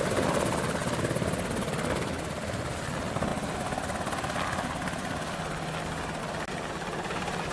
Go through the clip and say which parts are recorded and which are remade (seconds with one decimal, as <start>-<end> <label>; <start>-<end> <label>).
0.0-7.5 recorded

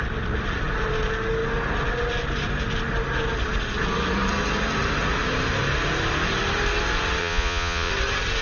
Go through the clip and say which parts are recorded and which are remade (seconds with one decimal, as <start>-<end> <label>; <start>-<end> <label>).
0.0-7.2 recorded; 7.2-7.9 remade; 7.9-8.4 recorded

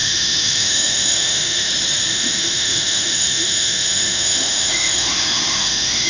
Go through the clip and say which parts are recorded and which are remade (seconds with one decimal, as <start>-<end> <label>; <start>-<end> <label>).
0.0-1.7 remade; 1.7-2.1 recorded; 2.1-6.1 remade

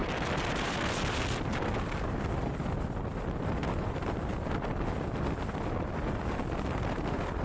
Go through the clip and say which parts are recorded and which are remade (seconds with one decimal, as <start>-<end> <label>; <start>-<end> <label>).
0.0-7.4 recorded

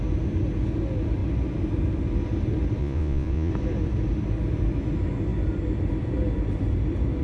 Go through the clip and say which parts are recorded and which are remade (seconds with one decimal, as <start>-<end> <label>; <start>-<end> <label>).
0.0-2.8 recorded; 2.8-3.5 remade; 3.5-7.2 recorded

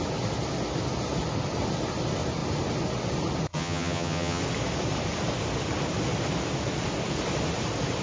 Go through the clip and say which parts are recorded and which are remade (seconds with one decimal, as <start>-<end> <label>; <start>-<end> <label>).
0.0-3.5 recorded; 3.5-4.4 remade; 4.4-8.0 recorded

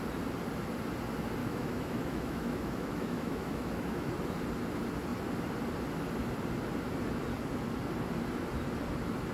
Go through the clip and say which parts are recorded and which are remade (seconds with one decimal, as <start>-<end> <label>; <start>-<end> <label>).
0.0-1.4 recorded; 1.4-4.1 remade; 4.1-9.3 recorded